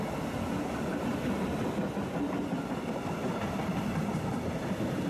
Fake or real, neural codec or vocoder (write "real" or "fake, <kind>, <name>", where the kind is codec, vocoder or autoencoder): real